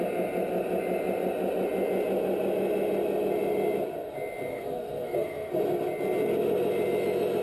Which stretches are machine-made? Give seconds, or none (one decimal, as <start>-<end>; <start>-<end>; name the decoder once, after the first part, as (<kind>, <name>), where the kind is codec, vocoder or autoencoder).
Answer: 4.5-5.5 (codec, SNAC)